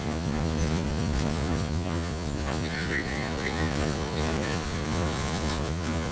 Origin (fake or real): fake